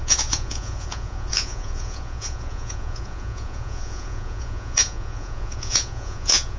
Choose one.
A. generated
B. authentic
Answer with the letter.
A